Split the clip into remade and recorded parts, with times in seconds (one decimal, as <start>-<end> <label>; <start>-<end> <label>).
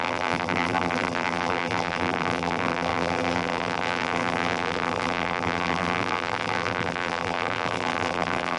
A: 0.0-8.6 remade